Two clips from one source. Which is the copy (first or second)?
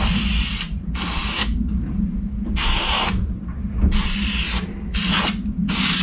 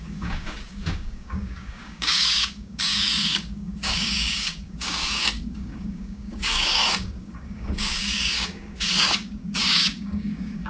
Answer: second